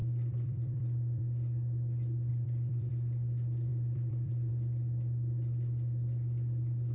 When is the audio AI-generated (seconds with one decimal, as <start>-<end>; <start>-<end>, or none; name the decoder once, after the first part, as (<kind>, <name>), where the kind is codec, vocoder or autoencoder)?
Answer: 0.0-1.2 (vocoder, BigVGAN v2); 2.3-2.9; 3.7-4.5